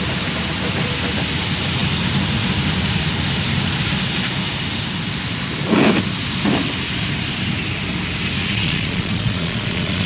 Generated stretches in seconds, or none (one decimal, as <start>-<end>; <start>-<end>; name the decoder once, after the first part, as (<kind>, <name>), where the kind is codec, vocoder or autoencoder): 8.4-10.1 (vocoder, Vocos)